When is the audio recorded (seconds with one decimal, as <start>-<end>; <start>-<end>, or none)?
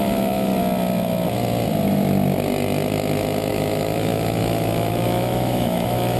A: 0.5-3.5